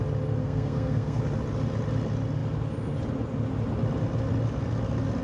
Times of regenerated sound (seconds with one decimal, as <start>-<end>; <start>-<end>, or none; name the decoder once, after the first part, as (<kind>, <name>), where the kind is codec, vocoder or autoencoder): 0.4-1.2 (codec, SNAC)